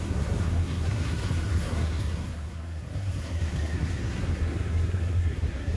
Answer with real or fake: fake